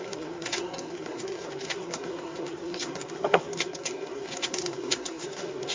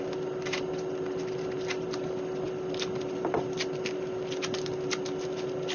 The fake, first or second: first